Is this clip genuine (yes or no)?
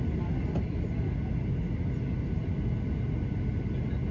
yes